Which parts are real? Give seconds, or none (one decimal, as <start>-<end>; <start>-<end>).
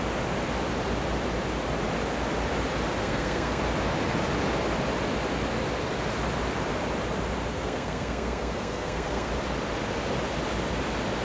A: 0.0-3.0; 3.6-7.5; 9.3-11.2